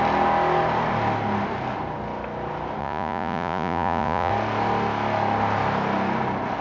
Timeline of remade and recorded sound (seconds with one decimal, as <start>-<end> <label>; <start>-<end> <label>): 0.0-2.8 recorded; 2.8-4.3 remade; 4.3-6.6 recorded